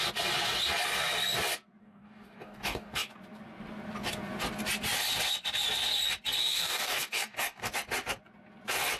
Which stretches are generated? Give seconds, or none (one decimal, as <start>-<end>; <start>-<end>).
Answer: 1.8-3.1; 6.4-7.6